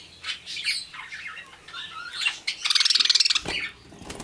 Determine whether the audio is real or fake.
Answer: real